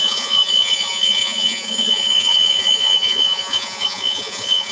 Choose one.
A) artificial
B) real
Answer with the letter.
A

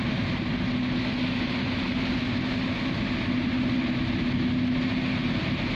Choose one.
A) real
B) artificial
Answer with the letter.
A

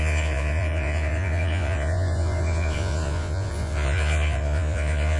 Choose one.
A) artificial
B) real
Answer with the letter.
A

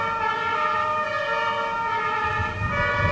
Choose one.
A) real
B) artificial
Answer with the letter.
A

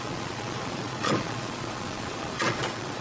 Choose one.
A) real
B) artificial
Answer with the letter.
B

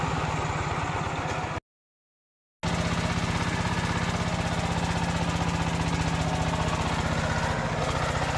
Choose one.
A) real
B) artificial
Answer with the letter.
A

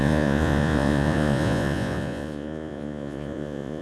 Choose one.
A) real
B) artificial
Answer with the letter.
B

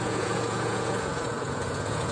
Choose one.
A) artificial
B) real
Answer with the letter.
A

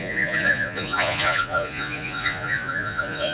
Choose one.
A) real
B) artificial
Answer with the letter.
B